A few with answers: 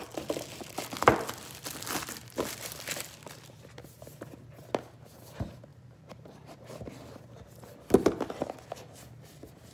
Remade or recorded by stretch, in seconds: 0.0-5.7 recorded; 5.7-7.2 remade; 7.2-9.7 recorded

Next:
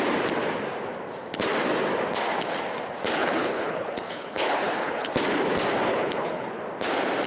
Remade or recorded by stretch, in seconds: 0.0-3.2 recorded; 3.2-5.1 remade; 5.1-5.9 recorded; 5.9-6.6 remade; 6.6-7.3 recorded